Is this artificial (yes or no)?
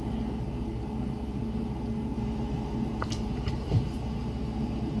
yes